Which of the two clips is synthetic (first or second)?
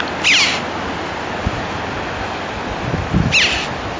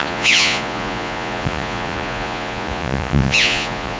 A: second